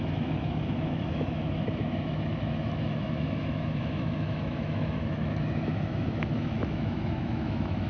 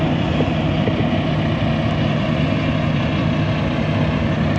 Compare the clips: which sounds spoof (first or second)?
first